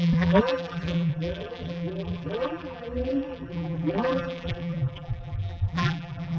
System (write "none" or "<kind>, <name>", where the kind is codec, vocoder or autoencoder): vocoder, BigVGAN v2